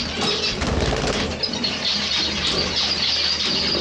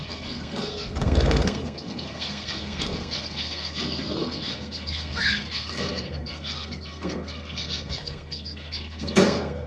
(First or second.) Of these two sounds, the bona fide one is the first